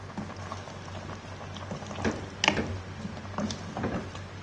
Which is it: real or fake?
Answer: real